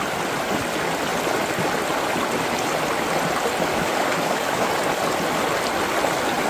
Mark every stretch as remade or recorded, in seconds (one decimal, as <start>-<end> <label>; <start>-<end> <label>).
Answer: 0.0-3.7 recorded; 3.7-4.7 remade; 4.7-6.5 recorded